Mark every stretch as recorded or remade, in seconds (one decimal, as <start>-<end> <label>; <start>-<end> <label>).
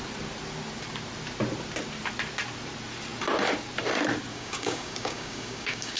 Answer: 0.0-4.3 recorded; 4.3-6.0 remade